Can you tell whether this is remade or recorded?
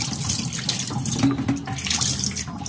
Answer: recorded